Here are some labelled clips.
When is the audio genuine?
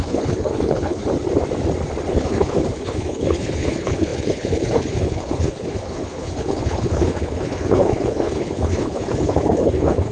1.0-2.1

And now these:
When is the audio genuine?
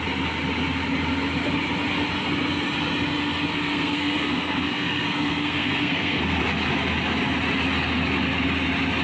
0.0-3.5; 6.4-9.0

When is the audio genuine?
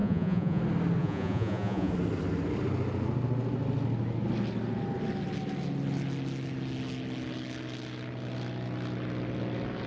0.6-1.0; 1.9-9.9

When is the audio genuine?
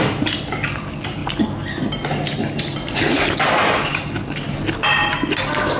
0.0-5.8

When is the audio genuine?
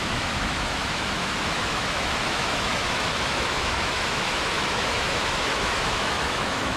none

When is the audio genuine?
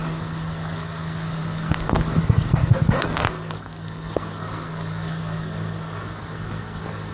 none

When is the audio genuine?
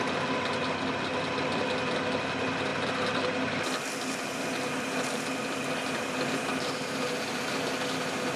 0.0-8.4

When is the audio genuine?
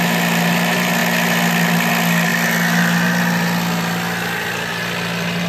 0.0-5.5